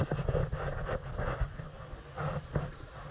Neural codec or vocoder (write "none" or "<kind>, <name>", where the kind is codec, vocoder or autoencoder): none